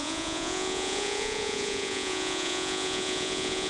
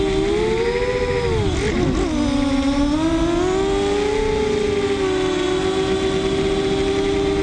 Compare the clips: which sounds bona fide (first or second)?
second